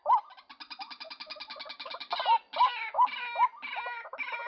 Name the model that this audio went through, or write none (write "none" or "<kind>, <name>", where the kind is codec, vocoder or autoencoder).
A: none